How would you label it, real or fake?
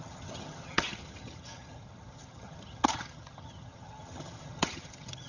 fake